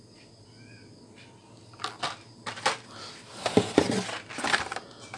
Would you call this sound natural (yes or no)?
yes